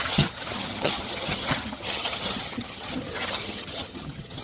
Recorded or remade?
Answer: remade